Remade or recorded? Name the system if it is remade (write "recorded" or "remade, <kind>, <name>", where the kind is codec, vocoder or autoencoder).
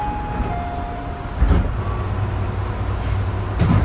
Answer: recorded